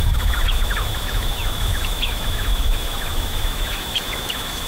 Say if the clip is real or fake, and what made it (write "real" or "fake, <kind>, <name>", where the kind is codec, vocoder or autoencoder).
fake, autoencoder, DAC-VAE